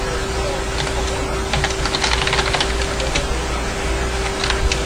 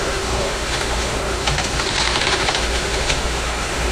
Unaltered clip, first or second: first